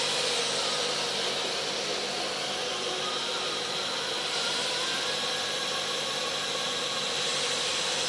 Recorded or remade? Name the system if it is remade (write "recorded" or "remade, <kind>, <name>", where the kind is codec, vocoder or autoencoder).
recorded